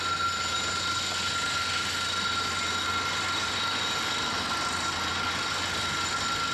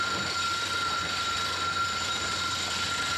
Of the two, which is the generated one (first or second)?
second